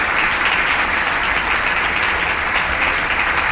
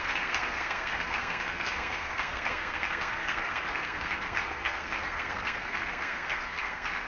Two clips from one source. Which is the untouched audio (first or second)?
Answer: first